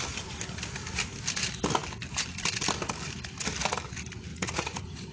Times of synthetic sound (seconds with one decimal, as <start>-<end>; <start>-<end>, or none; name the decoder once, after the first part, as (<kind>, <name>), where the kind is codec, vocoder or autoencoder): 4.3-5.1 (vocoder, Vocos)